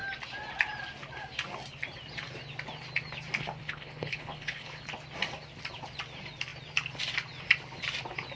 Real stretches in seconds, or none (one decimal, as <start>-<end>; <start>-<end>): 0.0-3.6; 4.8-8.4